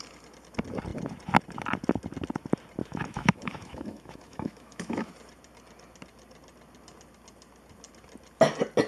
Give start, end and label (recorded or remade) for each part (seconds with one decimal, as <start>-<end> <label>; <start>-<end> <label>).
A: 0.0-2.8 recorded; 2.8-5.1 remade; 5.1-8.9 recorded